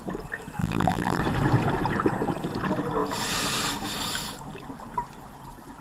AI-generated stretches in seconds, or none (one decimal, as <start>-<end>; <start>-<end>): 0.6-1.2